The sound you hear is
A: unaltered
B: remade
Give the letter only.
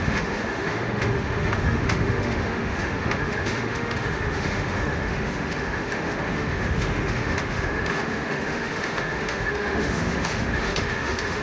B